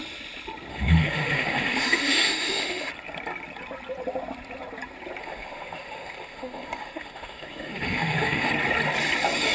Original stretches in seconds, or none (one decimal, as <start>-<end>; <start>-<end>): 0.0-0.7; 2.9-5.2; 8.5-9.5